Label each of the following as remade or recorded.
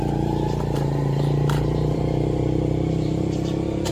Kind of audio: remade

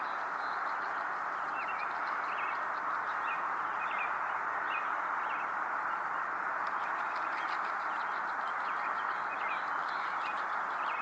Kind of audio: recorded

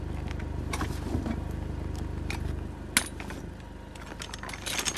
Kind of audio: recorded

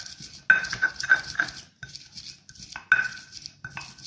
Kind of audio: recorded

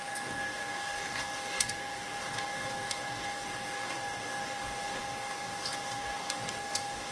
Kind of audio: remade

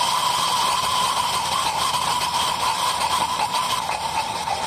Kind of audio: recorded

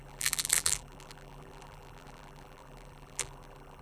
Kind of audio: remade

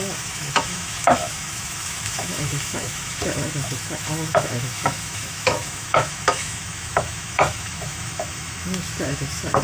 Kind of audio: remade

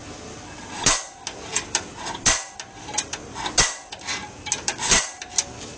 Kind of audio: recorded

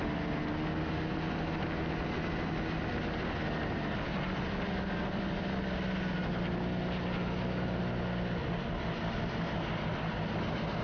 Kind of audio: recorded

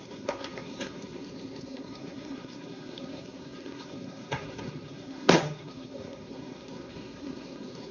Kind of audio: remade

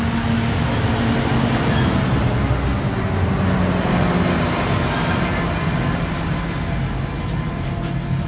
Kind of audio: recorded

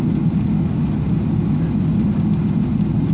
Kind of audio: recorded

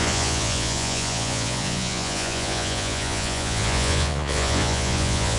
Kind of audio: remade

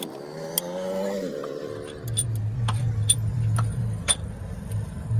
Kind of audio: recorded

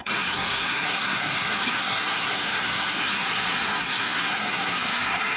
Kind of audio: remade